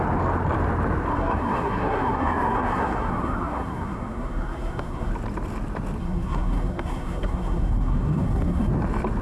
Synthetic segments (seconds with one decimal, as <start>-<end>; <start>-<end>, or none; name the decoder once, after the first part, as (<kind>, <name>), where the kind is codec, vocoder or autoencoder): 1.1-5.1 (codec, SNAC); 6.0-8.7